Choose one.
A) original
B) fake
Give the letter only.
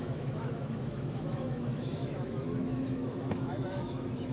B